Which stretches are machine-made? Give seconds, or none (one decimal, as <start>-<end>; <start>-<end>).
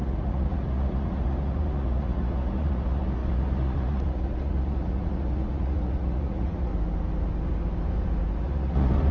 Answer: 0.0-6.7; 8.4-9.1